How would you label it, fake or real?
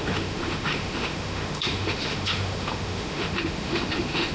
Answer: fake